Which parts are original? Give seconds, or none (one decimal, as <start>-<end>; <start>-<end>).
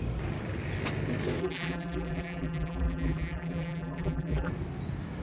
0.0-1.4; 4.5-5.2